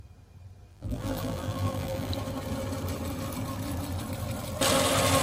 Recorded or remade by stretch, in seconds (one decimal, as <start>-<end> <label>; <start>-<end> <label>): 0.0-0.7 recorded; 0.7-2.1 remade; 2.1-5.2 recorded